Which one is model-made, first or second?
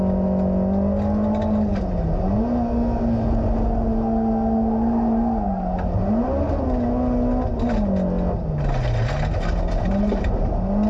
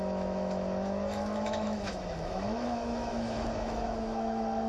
second